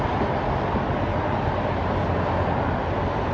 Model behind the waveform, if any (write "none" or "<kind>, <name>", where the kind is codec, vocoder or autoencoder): none